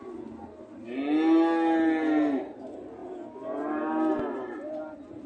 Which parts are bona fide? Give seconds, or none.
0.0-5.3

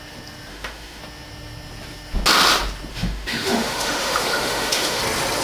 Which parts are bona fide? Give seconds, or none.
0.0-0.5; 1.0-2.9; 5.0-5.4

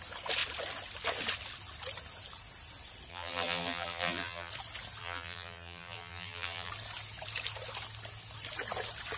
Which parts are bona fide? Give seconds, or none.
0.0-3.1; 4.5-5.0; 6.7-9.2